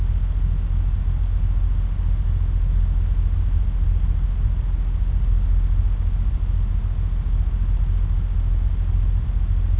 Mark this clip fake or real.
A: real